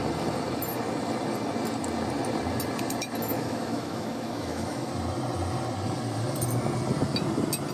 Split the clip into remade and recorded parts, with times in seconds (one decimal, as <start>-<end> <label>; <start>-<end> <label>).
0.0-3.3 recorded; 3.3-4.9 remade; 4.9-7.7 recorded